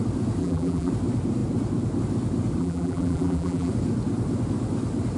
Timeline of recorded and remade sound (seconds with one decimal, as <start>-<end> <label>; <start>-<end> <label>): 0.0-0.4 recorded; 0.4-0.9 remade; 0.9-2.6 recorded; 2.6-3.7 remade; 3.7-5.2 recorded